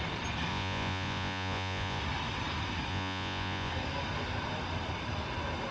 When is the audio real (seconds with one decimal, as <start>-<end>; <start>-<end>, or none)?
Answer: 0.0-0.5; 2.0-2.9; 3.7-5.7